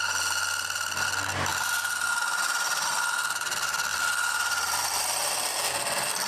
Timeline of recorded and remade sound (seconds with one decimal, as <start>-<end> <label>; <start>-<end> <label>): 0.0-3.9 recorded; 3.9-5.0 remade; 5.0-6.3 recorded